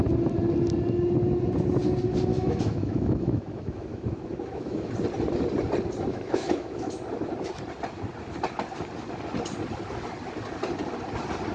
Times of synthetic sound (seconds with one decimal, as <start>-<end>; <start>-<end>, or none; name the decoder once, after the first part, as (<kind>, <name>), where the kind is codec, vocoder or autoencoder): 2.3-4.9 (autoencoder, DAC-VAE); 6.1-7.0